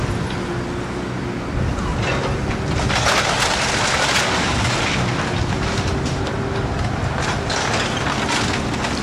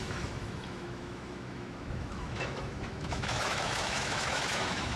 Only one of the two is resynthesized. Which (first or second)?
second